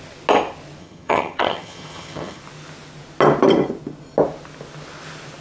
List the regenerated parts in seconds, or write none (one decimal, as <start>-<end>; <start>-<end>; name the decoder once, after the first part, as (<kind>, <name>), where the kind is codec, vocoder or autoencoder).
0.8-2.4 (vocoder, HiFi-GAN)